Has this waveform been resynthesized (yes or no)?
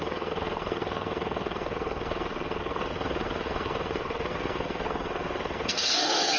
yes